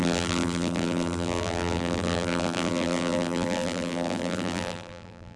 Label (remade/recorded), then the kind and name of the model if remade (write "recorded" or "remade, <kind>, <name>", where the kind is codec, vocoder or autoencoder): remade, vocoder, BigVGAN v2